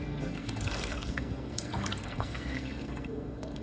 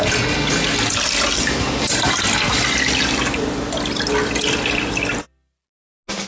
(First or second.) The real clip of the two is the second